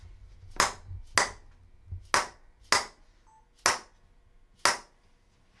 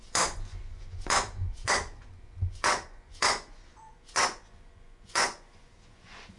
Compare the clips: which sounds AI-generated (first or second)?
second